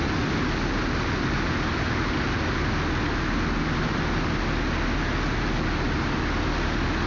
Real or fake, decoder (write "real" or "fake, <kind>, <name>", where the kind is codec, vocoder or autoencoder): real